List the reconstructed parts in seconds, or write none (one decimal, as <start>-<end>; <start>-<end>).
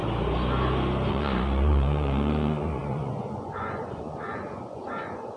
1.1-5.4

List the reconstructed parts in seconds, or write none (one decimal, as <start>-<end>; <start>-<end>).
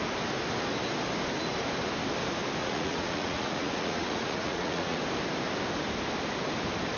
2.6-5.0